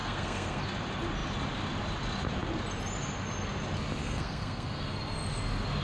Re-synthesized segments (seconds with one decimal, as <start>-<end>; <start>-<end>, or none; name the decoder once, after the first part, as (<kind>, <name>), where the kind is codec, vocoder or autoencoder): 0.0-0.6 (codec, SNAC); 4.0-4.8